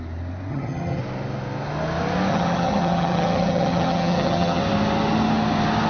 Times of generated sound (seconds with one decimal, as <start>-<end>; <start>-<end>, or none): 0.5-1.0; 2.3-4.6